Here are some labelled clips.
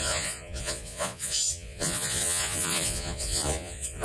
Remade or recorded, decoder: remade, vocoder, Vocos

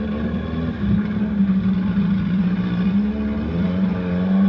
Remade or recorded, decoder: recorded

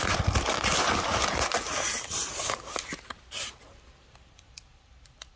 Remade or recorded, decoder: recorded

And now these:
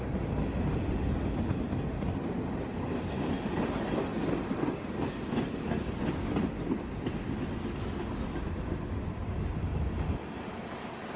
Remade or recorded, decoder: recorded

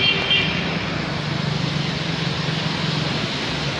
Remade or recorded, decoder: recorded